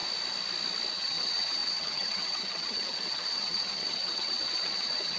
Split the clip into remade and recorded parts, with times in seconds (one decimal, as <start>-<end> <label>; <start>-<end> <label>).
0.0-0.9 recorded; 0.9-5.2 remade